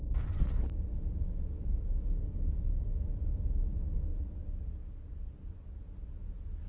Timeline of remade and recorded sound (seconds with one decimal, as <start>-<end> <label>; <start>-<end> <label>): 0.0-1.9 recorded; 1.9-3.0 remade; 3.0-6.7 recorded